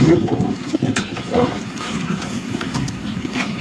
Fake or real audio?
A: fake